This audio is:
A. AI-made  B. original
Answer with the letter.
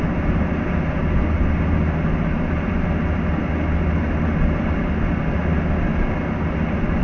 B